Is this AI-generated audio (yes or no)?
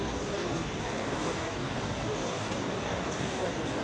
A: yes